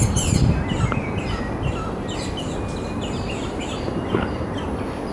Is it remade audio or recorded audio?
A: recorded